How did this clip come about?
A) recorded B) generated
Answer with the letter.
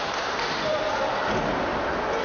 A